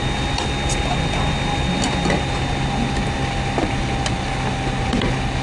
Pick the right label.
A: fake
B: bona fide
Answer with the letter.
B